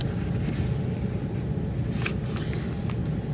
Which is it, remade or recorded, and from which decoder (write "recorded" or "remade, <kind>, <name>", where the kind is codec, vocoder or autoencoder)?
recorded